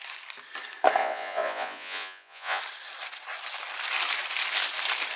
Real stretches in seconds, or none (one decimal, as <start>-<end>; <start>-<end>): 0.0-1.0; 2.6-5.2